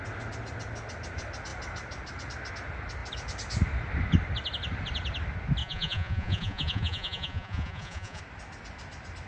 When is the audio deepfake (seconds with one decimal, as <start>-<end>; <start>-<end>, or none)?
5.6-8.2